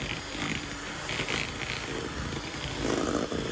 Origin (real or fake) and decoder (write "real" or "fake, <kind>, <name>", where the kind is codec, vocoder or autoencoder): fake, vocoder, BigVGAN v2